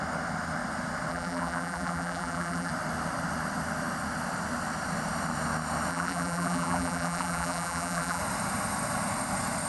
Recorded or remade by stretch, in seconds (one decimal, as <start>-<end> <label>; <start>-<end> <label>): 0.0-1.1 recorded; 1.1-2.7 remade; 2.7-5.9 recorded; 5.9-8.2 remade; 8.2-9.7 recorded